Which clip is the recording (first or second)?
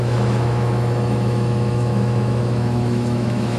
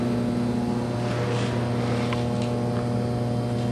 second